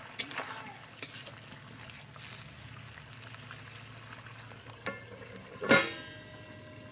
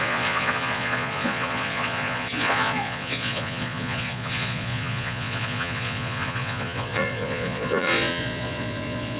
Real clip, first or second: first